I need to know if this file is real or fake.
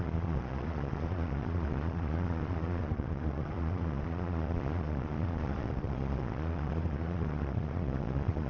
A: fake